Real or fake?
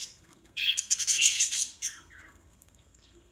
fake